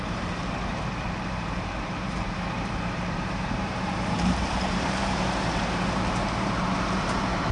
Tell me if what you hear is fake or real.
fake